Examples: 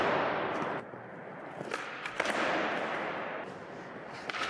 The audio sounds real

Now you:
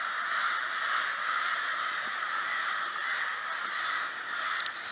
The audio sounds real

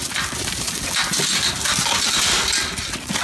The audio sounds real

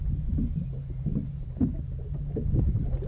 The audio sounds real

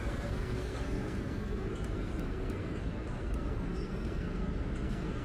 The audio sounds fake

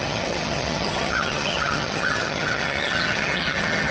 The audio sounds fake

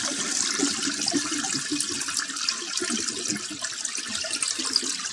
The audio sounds real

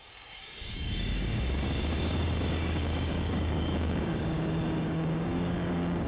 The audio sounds fake